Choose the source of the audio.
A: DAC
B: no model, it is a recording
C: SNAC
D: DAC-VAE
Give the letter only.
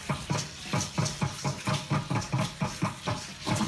B